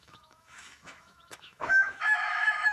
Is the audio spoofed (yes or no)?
yes